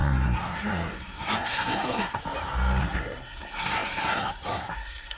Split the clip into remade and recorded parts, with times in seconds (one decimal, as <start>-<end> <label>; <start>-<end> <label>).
0.0-2.2 remade; 2.2-2.8 recorded; 2.8-5.2 remade